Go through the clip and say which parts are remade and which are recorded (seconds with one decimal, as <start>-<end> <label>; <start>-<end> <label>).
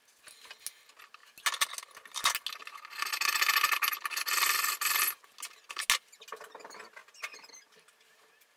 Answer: 0.0-8.6 recorded